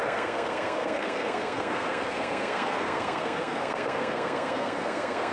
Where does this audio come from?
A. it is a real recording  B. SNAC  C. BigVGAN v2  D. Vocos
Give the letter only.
B